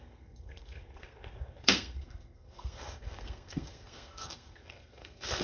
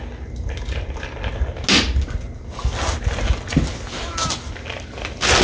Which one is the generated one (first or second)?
first